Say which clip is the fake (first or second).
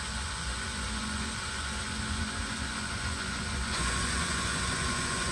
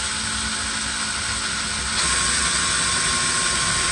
first